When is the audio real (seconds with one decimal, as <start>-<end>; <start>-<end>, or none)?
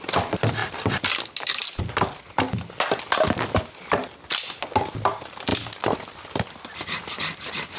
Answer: 0.0-7.8